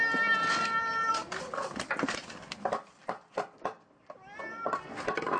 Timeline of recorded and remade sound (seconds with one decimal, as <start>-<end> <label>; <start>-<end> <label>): 0.0-5.4 recorded